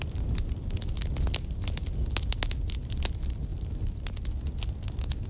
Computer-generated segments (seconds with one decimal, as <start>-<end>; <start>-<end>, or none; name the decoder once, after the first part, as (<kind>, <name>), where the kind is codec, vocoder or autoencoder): none